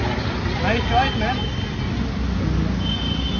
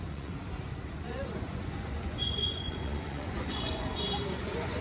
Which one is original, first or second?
first